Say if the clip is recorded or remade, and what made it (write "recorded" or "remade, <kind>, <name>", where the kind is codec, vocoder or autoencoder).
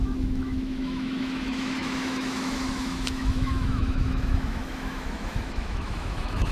remade, autoencoder, DAC-VAE